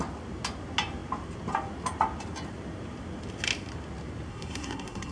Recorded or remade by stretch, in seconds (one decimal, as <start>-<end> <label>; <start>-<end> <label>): 0.0-4.3 recorded; 4.3-5.1 remade

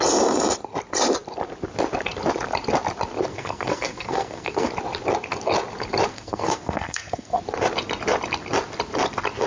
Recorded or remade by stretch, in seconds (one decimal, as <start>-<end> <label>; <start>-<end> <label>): 0.0-3.3 recorded; 3.3-4.7 remade; 4.7-6.1 recorded; 6.1-7.4 remade; 7.4-9.5 recorded

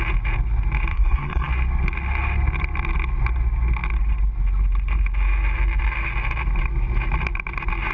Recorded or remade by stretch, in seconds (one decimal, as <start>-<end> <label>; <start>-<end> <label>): 0.0-0.9 recorded; 0.9-1.5 remade; 1.5-7.9 recorded